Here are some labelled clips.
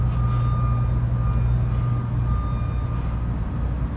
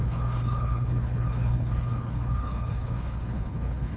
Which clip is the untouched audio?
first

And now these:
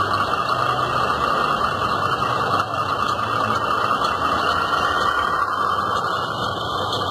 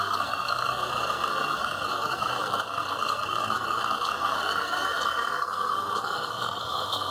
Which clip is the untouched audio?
first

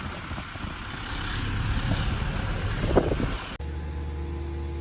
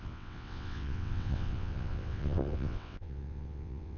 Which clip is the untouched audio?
first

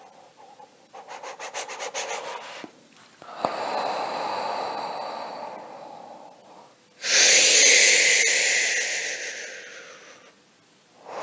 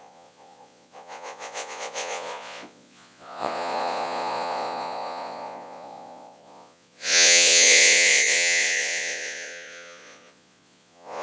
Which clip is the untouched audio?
first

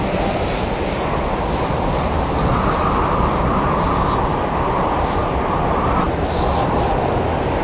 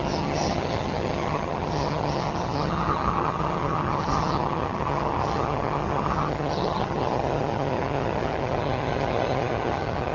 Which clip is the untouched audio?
first